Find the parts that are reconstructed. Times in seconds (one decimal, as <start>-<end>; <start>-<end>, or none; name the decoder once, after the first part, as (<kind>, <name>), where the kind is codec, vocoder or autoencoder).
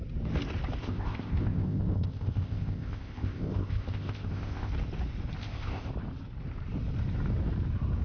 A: 0.8-4.7 (codec, ZipCodec); 5.4-5.9